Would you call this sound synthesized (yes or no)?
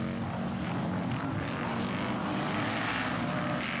no